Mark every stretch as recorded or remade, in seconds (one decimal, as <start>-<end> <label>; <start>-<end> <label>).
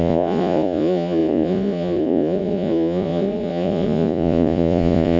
0.0-5.2 remade